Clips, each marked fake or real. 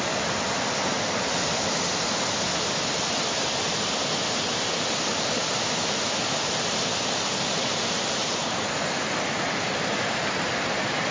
fake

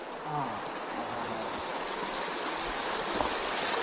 real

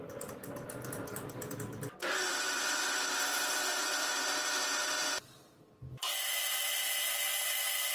fake